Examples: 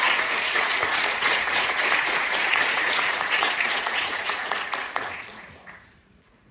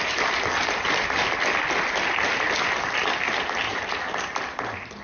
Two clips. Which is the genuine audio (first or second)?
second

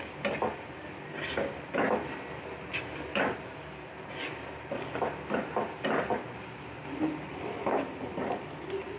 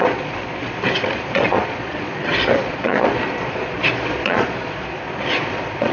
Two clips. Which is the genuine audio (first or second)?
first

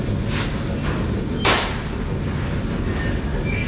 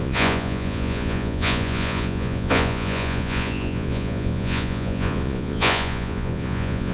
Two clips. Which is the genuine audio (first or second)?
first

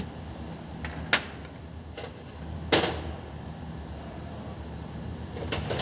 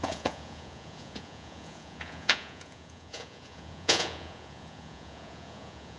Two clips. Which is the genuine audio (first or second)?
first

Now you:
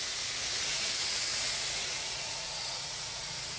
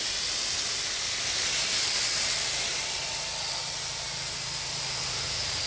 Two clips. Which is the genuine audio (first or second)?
second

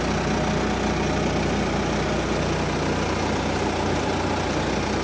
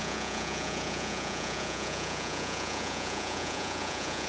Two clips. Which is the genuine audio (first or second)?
first